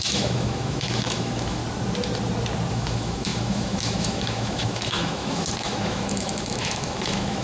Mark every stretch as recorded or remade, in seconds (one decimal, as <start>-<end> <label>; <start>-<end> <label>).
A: 0.0-1.6 remade; 1.6-2.7 recorded; 2.7-7.4 remade